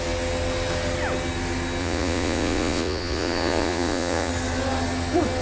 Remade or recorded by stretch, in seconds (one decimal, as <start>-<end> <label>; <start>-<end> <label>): 0.0-1.8 recorded; 1.8-4.3 remade; 4.3-5.4 recorded